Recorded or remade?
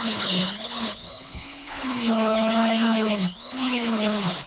remade